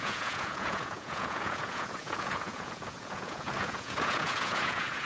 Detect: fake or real fake